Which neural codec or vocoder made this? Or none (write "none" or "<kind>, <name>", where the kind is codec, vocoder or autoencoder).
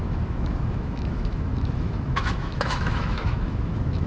autoencoder, DAC-VAE